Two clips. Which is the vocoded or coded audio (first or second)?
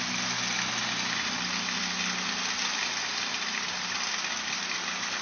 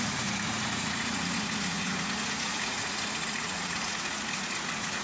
second